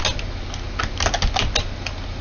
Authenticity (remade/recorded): recorded